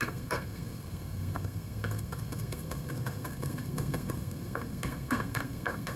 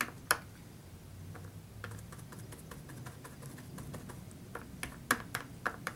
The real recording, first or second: second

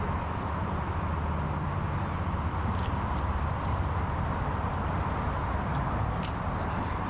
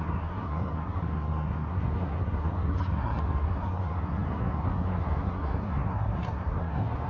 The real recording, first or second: first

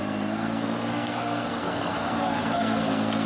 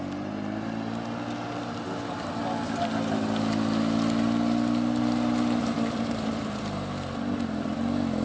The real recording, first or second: second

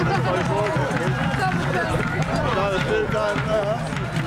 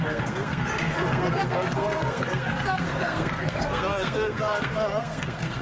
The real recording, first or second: first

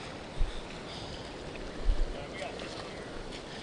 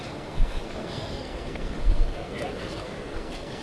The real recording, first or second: first